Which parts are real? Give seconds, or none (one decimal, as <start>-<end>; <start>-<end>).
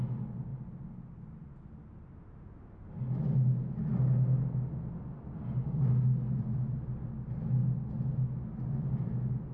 0.0-9.5